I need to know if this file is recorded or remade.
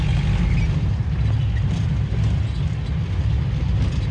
recorded